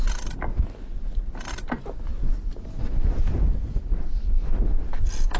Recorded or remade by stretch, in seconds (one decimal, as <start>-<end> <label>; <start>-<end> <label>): 0.0-5.4 recorded